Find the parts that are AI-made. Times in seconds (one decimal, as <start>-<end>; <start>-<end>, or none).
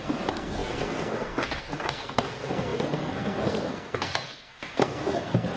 0.0-5.6